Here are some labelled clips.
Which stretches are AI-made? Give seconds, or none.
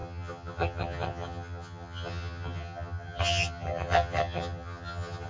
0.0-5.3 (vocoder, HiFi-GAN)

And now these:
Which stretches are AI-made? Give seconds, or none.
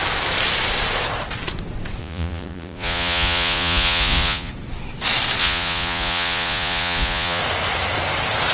2.0-4.5 (vocoder, Vocos); 5.4-7.4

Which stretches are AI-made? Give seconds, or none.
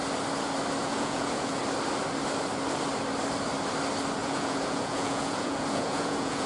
0.8-1.6 (vocoder, Vocos); 4.2-6.5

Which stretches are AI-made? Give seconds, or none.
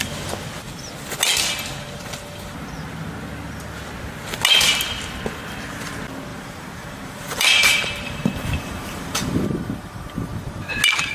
6.3-10.7 (vocoder, BigVGAN v2)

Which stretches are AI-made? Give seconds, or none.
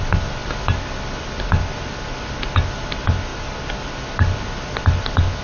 none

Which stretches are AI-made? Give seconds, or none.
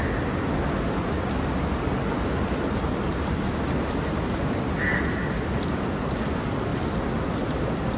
6.7-7.2 (vocoder, BigVGAN v2)